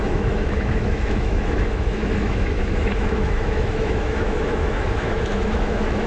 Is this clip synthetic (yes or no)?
yes